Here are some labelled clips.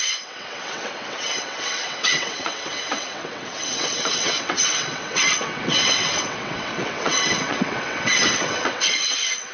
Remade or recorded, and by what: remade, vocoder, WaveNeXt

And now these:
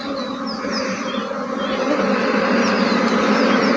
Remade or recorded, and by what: recorded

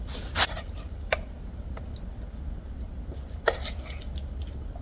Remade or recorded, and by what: recorded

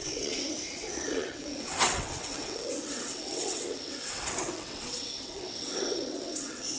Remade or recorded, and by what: remade, vocoder, WaveNeXt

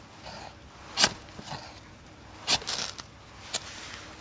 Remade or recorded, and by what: recorded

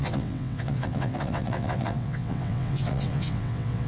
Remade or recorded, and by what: remade, vocoder, WaveNeXt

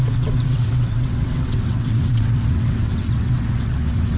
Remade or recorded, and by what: remade, vocoder, WaveNeXt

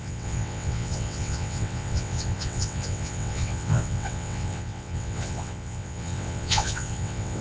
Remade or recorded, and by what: remade, vocoder, WaveNeXt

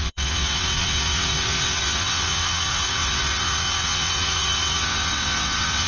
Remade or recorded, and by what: remade, vocoder, WaveNeXt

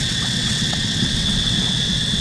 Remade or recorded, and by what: remade, vocoder, WaveNeXt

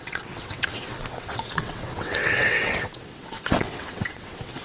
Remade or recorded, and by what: remade, vocoder, WaveNeXt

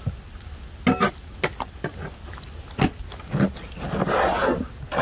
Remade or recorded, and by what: recorded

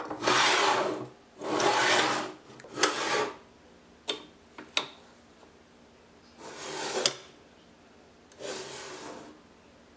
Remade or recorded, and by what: recorded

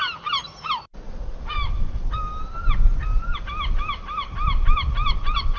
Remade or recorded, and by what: recorded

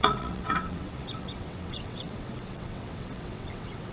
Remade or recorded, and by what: remade, vocoder, WaveNeXt